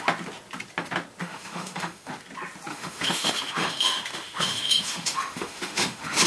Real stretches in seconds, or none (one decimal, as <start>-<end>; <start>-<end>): 0.0-1.2; 2.1-2.7